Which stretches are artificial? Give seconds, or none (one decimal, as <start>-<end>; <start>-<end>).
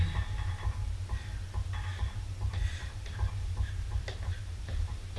1.9-5.2